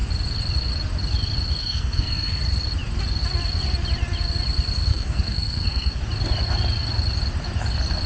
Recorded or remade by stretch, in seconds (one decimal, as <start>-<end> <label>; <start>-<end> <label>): 0.0-1.6 recorded; 1.6-2.4 remade; 2.4-4.9 recorded; 4.9-6.0 remade; 6.0-8.1 recorded